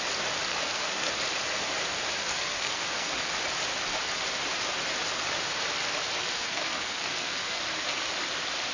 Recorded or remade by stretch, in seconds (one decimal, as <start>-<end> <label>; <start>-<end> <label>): 0.0-0.5 recorded; 0.5-1.1 remade; 1.1-2.2 recorded; 2.2-3.2 remade; 3.2-6.2 recorded; 6.2-7.6 remade; 7.6-8.7 recorded